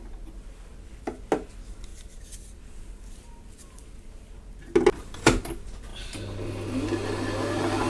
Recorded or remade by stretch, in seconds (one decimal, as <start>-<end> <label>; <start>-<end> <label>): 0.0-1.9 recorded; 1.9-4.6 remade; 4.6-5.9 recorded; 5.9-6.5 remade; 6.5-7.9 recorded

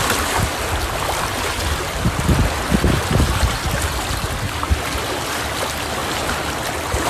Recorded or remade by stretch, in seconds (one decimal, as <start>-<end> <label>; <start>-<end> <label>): 0.0-0.5 recorded; 0.5-1.5 remade; 1.5-6.0 recorded; 6.0-6.6 remade; 6.6-7.1 recorded

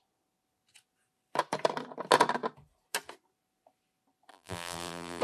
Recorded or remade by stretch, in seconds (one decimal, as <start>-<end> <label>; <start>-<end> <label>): 0.0-4.3 recorded; 4.3-5.2 remade

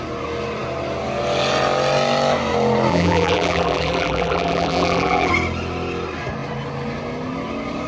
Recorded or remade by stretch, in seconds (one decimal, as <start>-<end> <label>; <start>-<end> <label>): 0.0-2.9 recorded; 2.9-5.3 remade; 5.3-7.9 recorded